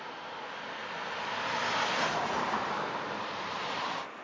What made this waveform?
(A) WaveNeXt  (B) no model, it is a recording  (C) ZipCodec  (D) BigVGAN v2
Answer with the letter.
B